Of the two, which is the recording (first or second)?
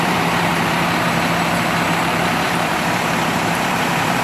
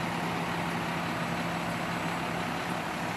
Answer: second